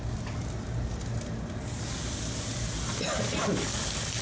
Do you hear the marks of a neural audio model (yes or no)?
no